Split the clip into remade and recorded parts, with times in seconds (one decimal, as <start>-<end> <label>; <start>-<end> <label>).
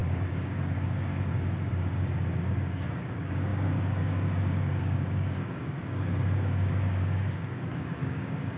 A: 0.0-8.6 remade